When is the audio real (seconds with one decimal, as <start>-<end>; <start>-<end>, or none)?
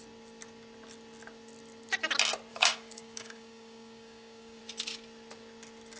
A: 0.0-2.5; 4.6-6.0